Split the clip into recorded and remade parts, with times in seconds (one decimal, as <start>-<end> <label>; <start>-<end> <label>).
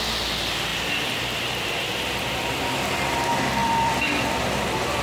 0.0-0.7 recorded; 0.7-1.8 remade; 1.8-3.6 recorded; 3.6-4.3 remade; 4.3-5.0 recorded